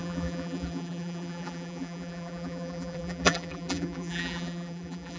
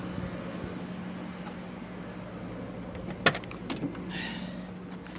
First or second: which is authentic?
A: second